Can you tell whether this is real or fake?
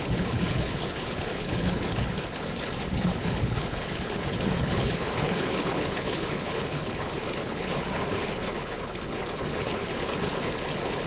fake